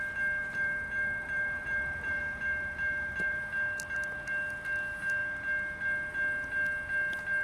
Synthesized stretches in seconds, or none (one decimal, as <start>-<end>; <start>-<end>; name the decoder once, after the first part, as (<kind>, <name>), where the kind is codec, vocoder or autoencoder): 0.4-3.4 (vocoder, BigVGAN v2)